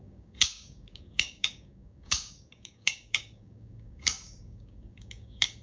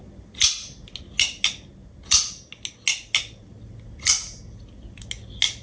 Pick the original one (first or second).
second